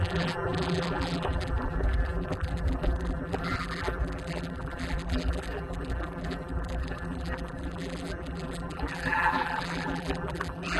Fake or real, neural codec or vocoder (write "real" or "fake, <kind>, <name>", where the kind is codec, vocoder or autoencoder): fake, vocoder, BigVGAN v2